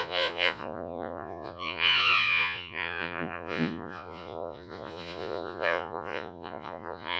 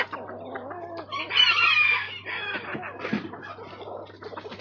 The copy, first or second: first